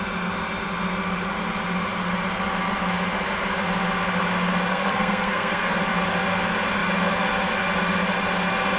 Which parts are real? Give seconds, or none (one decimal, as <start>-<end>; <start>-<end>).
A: 0.0-4.7; 5.8-8.8